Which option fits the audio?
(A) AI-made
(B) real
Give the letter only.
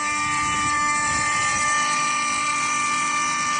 A